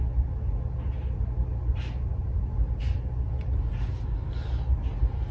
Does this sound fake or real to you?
real